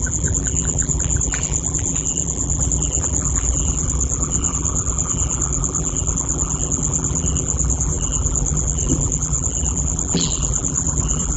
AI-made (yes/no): yes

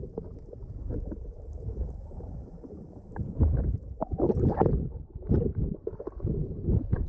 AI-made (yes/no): yes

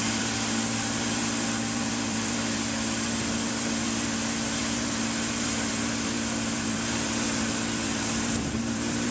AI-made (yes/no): yes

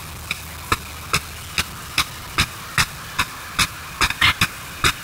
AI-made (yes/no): no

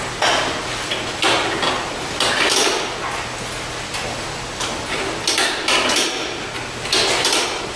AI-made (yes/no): no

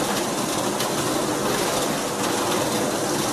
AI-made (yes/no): no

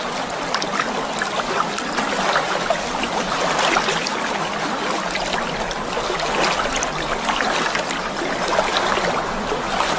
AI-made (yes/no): no